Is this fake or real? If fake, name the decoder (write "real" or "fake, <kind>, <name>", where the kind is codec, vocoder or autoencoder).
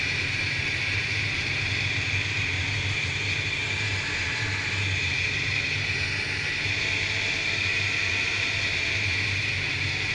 fake, vocoder, BigVGAN v2